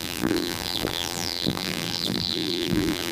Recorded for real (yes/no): no